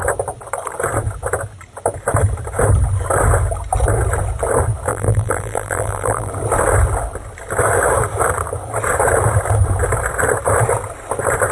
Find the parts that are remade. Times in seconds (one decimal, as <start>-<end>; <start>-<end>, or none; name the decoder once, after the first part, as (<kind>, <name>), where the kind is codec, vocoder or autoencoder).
4.9-6.3 (vocoder, BigVGAN v2)